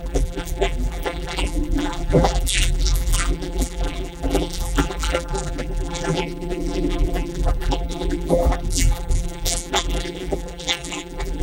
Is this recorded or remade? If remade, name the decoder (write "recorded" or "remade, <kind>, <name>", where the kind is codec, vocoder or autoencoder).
remade, vocoder, BigVGAN v2